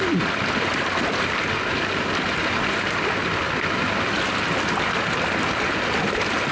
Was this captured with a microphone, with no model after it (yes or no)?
no